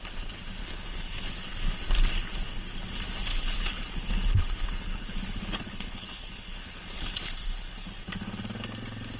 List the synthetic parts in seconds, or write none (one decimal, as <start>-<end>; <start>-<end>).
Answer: 0.6-1.2; 3.3-7.9

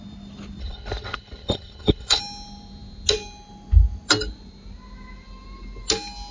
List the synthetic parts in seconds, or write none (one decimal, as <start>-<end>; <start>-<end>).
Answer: 0.6-2.2

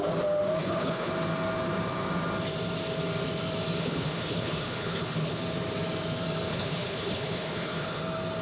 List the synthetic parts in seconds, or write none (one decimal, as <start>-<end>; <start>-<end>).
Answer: 0.6-1.1; 3.8-5.4; 6.5-8.0

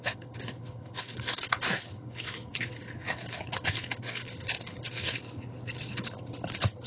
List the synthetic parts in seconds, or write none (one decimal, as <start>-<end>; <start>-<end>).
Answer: 0.0-6.9

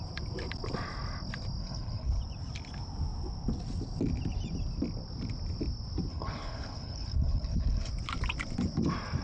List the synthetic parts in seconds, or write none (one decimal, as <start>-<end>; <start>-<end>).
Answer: 1.6-2.2; 6.1-7.9

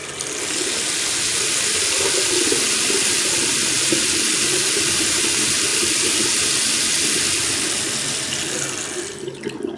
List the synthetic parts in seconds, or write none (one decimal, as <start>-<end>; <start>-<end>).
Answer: none

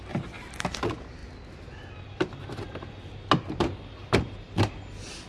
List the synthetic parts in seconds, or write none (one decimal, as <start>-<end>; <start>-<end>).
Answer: none